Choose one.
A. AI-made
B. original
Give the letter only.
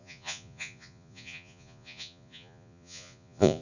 A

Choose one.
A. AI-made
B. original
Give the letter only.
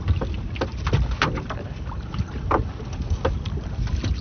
B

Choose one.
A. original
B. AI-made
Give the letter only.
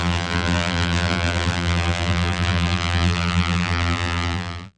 B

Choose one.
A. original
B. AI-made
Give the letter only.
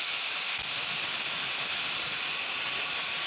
B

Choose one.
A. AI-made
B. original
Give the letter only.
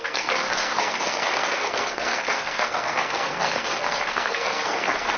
A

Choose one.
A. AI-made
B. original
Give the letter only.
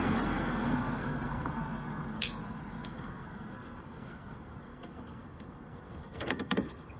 A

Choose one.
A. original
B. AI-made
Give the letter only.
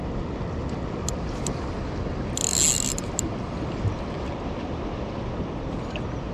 A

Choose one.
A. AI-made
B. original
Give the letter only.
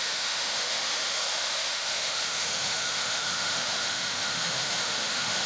A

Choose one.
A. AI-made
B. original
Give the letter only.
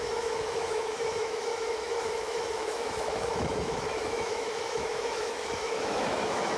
A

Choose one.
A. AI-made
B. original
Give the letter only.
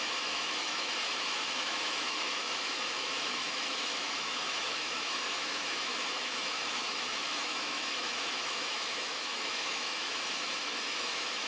A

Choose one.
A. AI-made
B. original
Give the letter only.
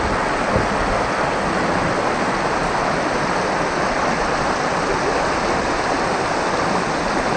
B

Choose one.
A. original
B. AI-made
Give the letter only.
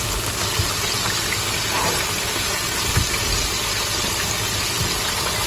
A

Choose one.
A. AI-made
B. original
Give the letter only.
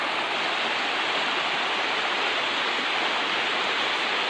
B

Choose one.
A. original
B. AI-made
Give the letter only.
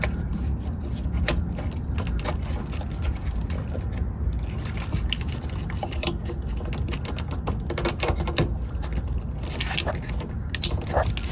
A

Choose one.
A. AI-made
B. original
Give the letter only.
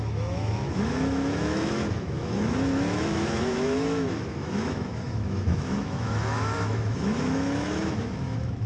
A